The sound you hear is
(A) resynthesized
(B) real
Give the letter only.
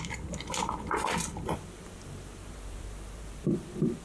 A